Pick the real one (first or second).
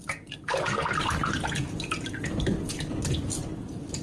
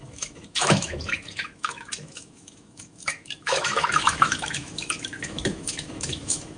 first